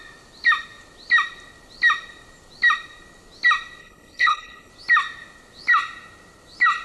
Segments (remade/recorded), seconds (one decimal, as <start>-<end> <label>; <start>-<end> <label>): 0.0-3.8 recorded; 3.8-4.7 remade; 4.7-6.8 recorded